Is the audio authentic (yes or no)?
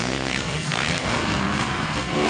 no